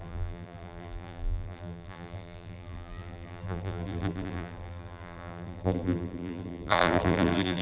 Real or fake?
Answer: fake